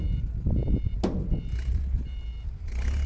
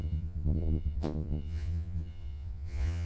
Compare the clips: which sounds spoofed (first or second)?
second